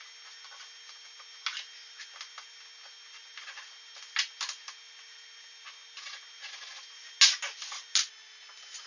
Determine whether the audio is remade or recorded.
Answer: recorded